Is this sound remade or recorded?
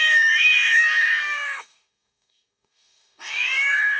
remade